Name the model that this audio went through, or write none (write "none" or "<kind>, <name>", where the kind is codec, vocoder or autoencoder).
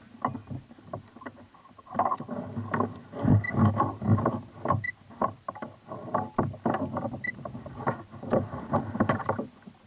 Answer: none